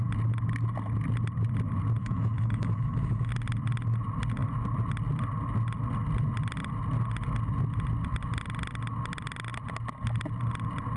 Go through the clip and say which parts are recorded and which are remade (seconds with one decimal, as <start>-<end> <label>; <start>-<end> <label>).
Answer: 0.0-2.0 recorded; 2.0-3.3 remade; 3.3-11.0 recorded